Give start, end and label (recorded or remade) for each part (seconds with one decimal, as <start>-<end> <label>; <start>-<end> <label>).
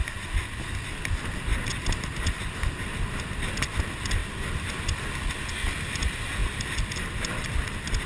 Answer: 0.0-8.1 recorded